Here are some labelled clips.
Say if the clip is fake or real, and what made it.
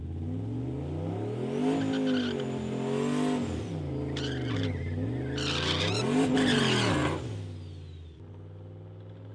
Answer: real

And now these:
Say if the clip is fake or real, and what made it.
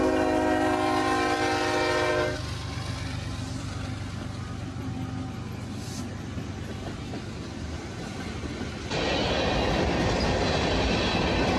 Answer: real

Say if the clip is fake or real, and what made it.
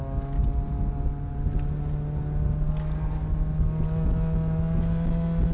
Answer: real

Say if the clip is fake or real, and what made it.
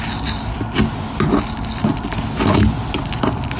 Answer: real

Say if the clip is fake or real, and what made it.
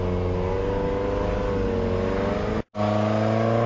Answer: real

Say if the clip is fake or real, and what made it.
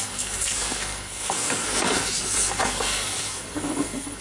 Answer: fake, codec, SNAC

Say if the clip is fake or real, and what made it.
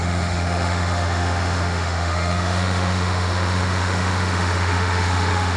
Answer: fake, autoencoder, DAC-VAE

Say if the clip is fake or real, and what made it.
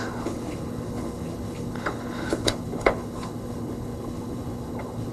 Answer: fake, codec, HILCodec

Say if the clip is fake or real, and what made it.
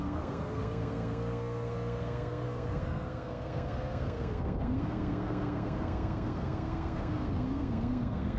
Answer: fake, codec, SNAC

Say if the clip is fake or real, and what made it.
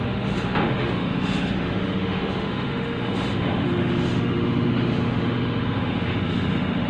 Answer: fake, autoencoder, DAC-VAE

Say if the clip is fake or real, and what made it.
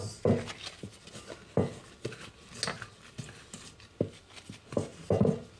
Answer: real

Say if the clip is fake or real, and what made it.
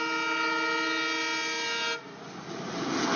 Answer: real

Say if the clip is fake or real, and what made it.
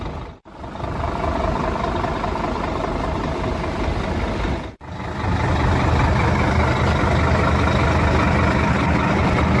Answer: real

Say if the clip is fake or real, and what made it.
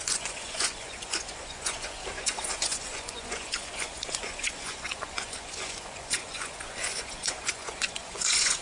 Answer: fake, vocoder, Vocos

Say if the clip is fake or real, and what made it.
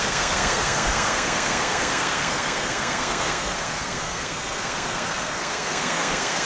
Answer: fake, codec, SNAC